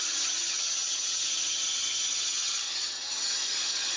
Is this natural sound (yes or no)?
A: no